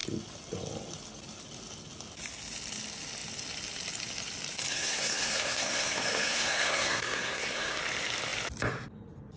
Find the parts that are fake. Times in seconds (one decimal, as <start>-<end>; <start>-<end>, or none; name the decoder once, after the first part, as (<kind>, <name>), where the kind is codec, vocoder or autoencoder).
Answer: 4.7-7.8 (codec, SNAC)